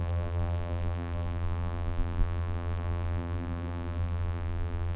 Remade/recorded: remade